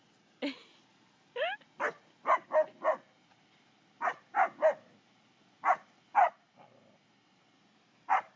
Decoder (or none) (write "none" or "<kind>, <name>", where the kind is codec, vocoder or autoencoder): none